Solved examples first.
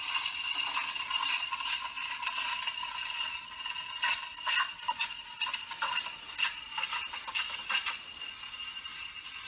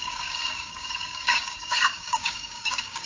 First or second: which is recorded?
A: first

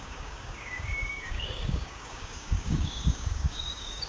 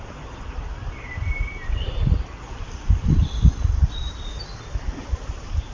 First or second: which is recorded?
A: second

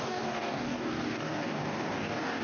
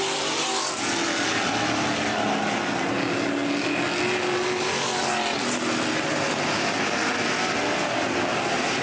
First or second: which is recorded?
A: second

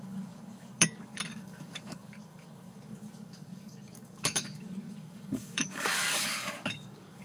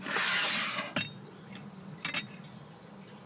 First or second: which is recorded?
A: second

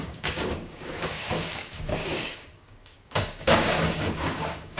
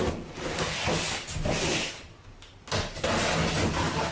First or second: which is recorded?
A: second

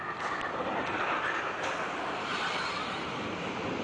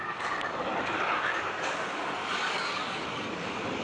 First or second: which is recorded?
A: first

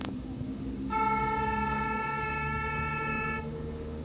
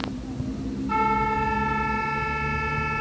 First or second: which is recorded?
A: second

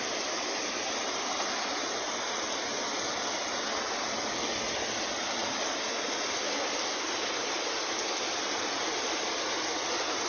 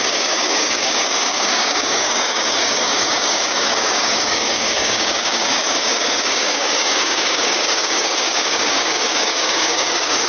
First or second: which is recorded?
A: first